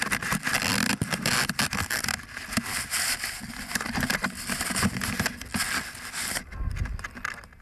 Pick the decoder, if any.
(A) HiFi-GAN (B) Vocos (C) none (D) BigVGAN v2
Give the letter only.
C